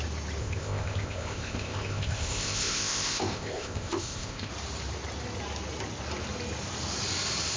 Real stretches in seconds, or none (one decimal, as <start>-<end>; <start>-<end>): 0.0-0.4; 4.5-7.6